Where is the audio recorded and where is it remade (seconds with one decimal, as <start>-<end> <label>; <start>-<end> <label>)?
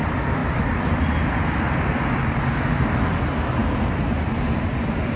0.0-5.2 recorded